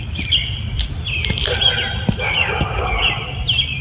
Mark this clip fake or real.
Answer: real